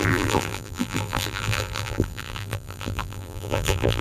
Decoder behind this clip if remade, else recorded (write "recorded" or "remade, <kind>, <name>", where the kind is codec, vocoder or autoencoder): remade, vocoder, BigVGAN v2